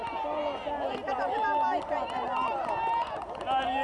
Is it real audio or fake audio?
real